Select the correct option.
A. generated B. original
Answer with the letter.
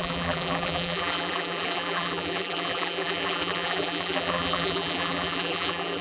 A